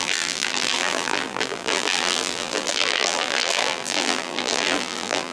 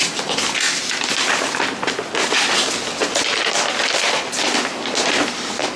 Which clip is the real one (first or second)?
second